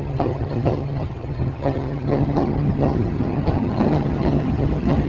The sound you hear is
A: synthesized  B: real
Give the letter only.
A